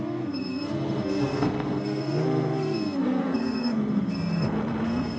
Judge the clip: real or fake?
fake